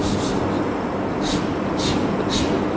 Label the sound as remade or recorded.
recorded